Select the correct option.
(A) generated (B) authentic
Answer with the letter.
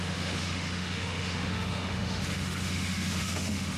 A